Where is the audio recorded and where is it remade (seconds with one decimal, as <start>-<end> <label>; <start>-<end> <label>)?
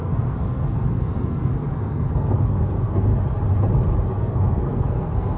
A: 0.0-3.1 remade; 3.1-4.2 recorded; 4.2-5.4 remade